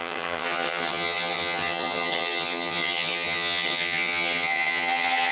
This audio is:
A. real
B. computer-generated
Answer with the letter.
B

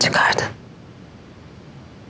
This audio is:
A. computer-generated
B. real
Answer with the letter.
B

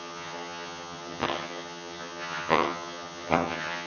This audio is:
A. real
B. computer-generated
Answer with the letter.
B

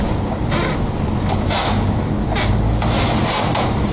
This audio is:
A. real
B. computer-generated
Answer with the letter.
A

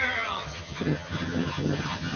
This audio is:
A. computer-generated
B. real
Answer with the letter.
A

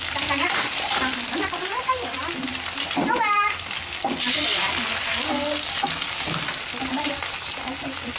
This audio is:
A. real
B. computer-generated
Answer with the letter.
A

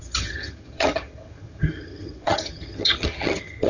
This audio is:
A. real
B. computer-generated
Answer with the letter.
B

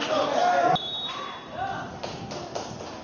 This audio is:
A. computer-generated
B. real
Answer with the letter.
B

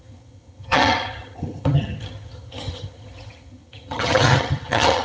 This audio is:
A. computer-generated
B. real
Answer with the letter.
A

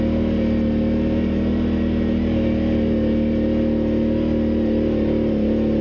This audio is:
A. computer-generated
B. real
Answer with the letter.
B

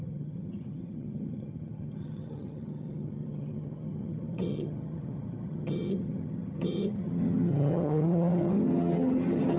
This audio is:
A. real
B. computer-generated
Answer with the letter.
B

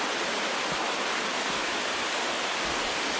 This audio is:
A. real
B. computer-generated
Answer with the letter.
A